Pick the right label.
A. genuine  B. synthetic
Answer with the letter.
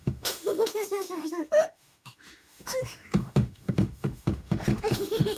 B